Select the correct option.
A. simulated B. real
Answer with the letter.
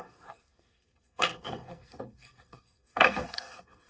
A